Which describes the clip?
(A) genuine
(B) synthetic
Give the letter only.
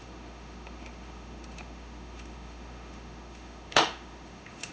B